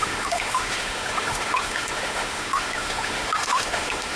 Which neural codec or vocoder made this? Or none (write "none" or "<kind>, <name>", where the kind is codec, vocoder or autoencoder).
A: autoencoder, DAC-VAE